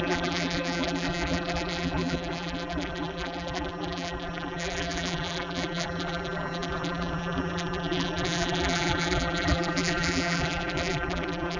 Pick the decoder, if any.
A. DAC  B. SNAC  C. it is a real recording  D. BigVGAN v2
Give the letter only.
D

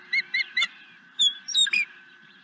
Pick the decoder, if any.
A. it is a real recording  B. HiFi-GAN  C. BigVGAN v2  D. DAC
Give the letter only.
C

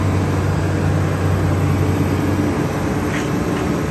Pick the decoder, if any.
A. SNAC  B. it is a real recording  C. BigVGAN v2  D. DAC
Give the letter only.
B